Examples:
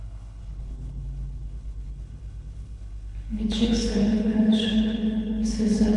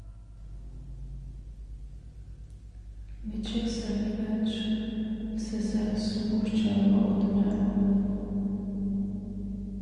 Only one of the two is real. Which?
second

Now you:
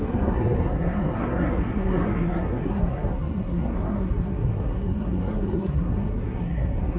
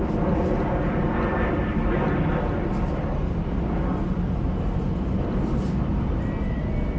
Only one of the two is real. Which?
second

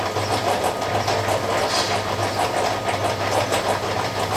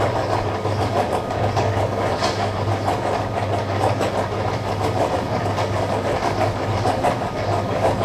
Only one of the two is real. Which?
first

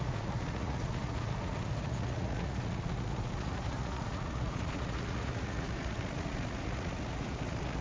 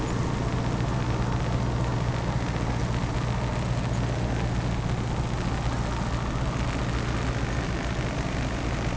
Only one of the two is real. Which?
second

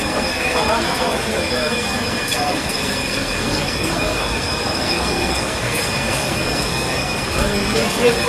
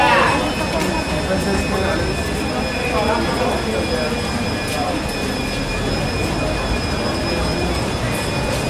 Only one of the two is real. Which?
second